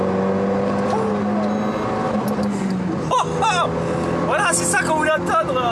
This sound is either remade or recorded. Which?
recorded